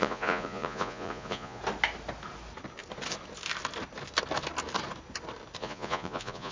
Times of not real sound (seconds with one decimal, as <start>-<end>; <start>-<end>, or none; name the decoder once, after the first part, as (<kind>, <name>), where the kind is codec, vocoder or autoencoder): 0.0-1.6 (vocoder, Vocos); 5.6-6.5